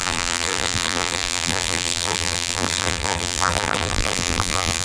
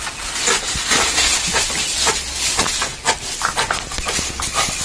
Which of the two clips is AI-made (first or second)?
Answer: first